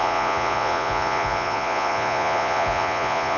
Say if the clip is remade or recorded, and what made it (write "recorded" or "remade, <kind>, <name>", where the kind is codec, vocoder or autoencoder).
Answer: remade, vocoder, Vocos